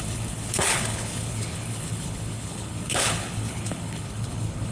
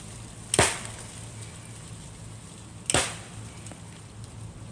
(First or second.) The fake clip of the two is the first